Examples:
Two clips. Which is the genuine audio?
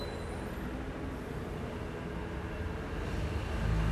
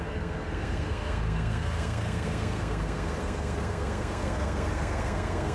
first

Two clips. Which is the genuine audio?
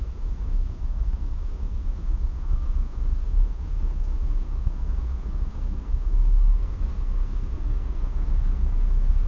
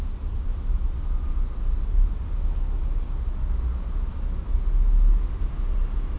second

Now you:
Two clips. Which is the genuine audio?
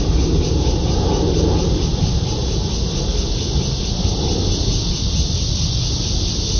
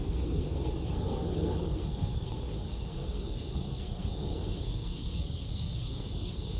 first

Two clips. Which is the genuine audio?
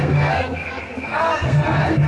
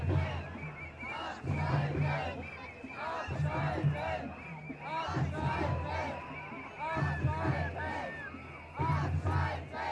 second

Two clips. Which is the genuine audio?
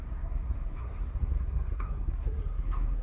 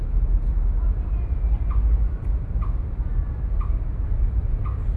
second